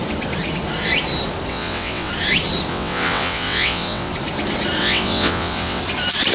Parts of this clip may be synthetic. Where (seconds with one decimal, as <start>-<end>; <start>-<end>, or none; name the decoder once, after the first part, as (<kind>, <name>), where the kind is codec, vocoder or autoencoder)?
1.5-2.1 (vocoder, WaveNeXt); 2.7-4.1; 4.8-5.8